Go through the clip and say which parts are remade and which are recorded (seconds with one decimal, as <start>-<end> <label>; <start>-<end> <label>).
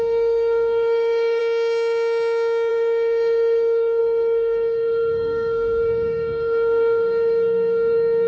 0.0-1.4 remade; 1.4-2.7 recorded; 2.7-8.3 remade